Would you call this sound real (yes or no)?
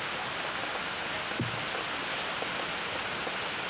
yes